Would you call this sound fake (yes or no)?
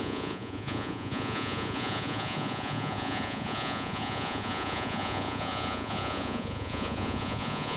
yes